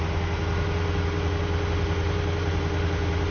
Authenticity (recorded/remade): recorded